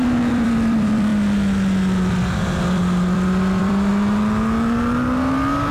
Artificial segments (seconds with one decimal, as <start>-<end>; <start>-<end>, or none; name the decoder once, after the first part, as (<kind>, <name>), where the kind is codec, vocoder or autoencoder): 0.0-1.1 (vocoder, BigVGAN v2); 2.6-3.9